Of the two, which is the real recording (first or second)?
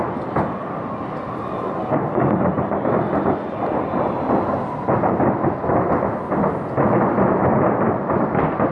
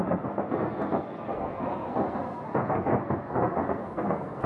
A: first